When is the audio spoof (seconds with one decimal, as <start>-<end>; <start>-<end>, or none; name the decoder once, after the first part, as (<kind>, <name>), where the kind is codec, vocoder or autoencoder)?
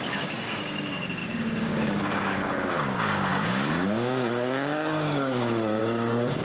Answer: 0.0-6.4 (codec, DAC)